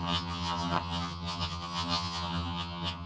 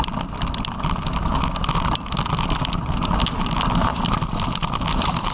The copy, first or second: first